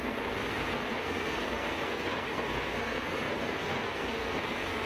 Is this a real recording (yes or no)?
no